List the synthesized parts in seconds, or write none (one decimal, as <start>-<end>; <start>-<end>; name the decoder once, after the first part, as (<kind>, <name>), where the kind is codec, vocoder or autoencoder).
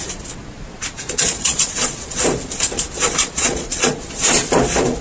0.4-2.2 (vocoder, Vocos); 3.2-4.0